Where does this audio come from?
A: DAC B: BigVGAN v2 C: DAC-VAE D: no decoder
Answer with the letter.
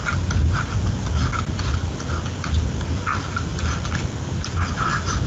D